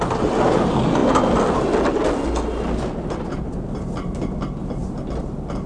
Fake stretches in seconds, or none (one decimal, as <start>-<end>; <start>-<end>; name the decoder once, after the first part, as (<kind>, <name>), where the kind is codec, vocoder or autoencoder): none